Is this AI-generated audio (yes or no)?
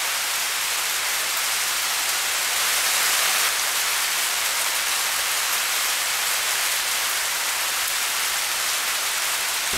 no